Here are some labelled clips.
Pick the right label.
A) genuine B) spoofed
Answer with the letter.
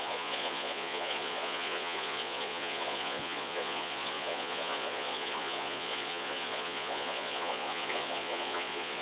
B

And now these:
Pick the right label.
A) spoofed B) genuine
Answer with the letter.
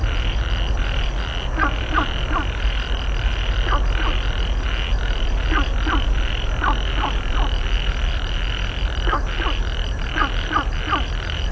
B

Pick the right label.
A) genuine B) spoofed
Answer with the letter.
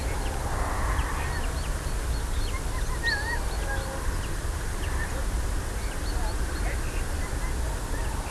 A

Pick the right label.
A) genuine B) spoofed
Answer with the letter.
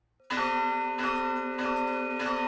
A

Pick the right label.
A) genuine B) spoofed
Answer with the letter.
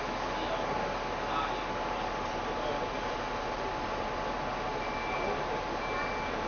A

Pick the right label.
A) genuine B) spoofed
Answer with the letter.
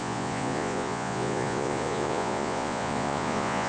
B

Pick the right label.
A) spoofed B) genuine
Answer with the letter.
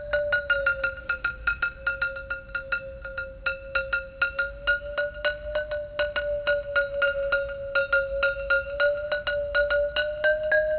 B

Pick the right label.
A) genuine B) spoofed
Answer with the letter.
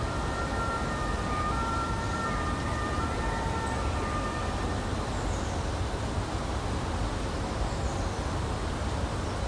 A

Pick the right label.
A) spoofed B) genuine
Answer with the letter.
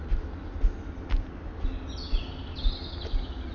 B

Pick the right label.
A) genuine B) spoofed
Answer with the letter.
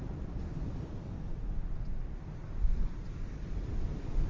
A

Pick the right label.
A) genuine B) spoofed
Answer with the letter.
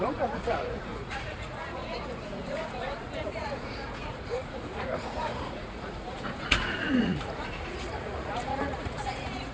B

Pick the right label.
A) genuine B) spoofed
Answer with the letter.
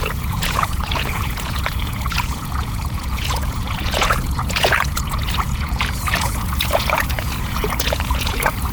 B